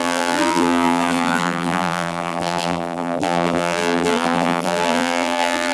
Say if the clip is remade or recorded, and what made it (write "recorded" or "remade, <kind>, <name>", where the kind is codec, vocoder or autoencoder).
remade, vocoder, BigVGAN v2